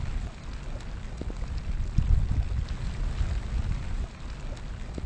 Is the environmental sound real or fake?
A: real